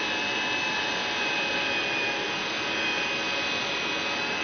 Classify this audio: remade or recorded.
recorded